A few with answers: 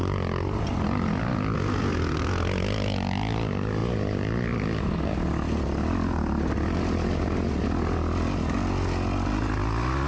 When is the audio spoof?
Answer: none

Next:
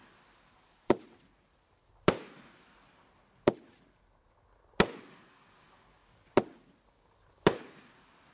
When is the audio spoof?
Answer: none

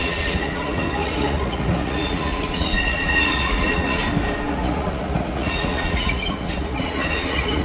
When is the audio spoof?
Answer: 0.0-4.0 (vocoder, Vocos); 4.5-7.6

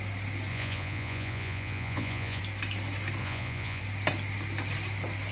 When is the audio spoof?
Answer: 0.5-2.4 (vocoder, Vocos); 3.2-3.8

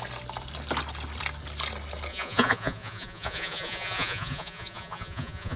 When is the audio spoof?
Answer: 2.1-5.6 (vocoder, Vocos)

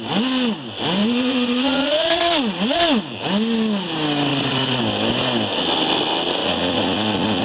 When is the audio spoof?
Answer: 1.0-2.8 (vocoder, Vocos); 4.3-4.8; 6.4-7.4